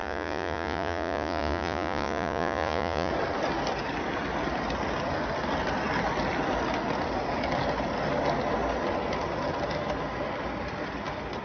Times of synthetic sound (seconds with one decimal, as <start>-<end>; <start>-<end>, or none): 0.0-3.1